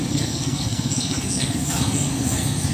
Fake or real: fake